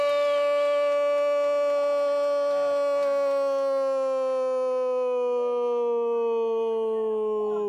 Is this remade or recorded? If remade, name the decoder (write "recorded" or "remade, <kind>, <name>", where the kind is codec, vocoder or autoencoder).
recorded